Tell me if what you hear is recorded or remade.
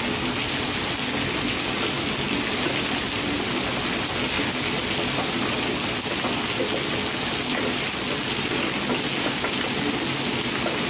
recorded